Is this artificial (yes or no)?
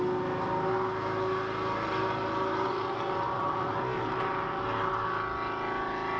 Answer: no